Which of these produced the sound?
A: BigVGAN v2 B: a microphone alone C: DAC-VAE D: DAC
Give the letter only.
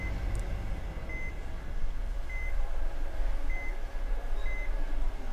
B